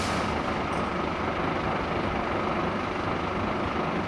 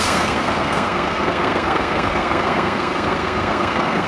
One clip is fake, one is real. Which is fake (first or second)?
second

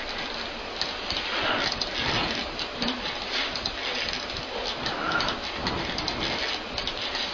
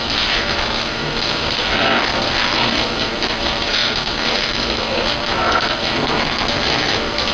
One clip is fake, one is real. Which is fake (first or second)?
second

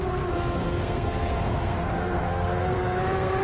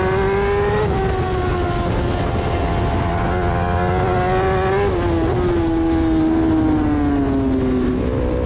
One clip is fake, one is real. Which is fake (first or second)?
first